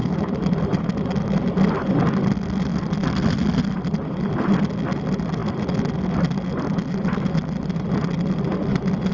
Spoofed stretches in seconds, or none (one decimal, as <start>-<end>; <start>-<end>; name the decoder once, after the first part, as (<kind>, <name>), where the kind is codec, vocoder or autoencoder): none